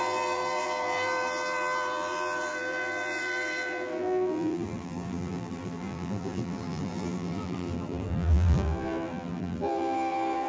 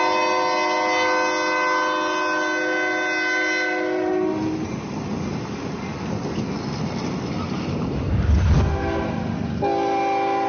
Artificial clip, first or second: first